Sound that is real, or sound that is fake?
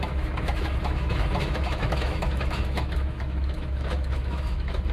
fake